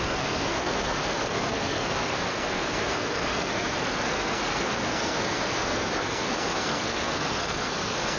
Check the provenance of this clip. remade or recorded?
remade